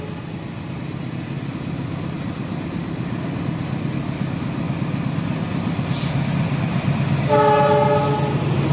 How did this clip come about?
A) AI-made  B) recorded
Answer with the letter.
B